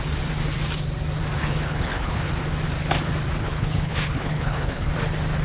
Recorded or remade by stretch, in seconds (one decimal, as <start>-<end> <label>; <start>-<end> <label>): 0.0-1.4 recorded; 1.4-2.3 remade; 2.3-3.4 recorded; 3.4-4.9 remade; 4.9-5.4 recorded